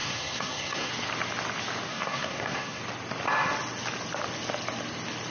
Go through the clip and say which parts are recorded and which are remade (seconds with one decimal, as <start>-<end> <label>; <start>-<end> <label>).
0.0-0.9 remade; 0.9-1.9 recorded; 1.9-2.8 remade; 2.8-5.3 recorded